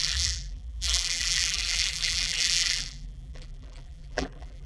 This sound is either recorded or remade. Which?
remade